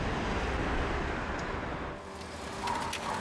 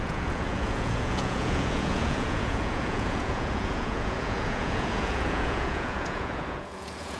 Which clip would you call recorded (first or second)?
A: first